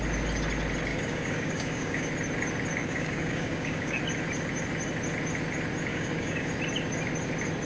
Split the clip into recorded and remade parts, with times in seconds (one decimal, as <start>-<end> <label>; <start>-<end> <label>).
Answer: 0.0-0.9 recorded; 0.9-2.1 remade; 2.1-2.8 recorded; 2.8-4.0 remade; 4.0-5.9 recorded; 5.9-6.5 remade; 6.5-7.6 recorded